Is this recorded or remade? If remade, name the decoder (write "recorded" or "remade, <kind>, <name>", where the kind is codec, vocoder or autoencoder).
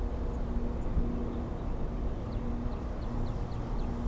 recorded